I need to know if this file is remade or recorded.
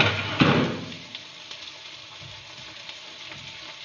recorded